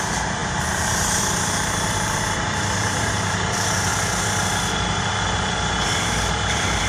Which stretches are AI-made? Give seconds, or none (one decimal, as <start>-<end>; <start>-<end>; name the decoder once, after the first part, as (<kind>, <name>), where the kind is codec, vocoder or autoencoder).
0.0-3.9 (vocoder, BigVGAN v2); 6.3-6.9